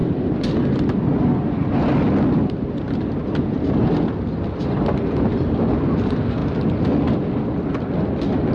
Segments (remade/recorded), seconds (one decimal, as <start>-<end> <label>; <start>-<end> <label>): 0.0-8.5 recorded